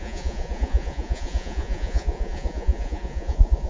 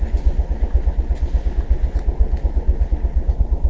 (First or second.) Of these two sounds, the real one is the second